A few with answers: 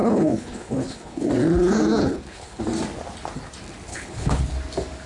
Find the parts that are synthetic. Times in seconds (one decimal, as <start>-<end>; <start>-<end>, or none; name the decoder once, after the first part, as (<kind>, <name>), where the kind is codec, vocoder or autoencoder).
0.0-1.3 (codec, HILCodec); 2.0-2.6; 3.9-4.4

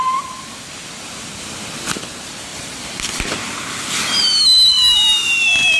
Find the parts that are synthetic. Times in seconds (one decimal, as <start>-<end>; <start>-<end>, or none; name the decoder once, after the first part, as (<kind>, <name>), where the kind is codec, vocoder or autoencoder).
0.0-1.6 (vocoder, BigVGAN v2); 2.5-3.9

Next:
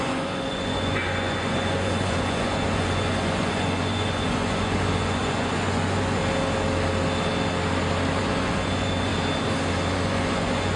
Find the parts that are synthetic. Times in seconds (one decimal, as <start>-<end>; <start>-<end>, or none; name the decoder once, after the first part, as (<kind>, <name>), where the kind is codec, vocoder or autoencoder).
0.0-6.2 (vocoder, Vocos); 8.2-9.1; 9.9-10.8